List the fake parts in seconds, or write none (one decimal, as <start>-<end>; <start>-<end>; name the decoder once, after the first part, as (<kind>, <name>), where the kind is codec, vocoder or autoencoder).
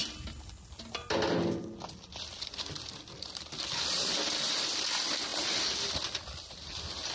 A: 1.8-7.1 (vocoder, BigVGAN v2)